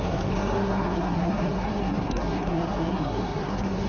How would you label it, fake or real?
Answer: fake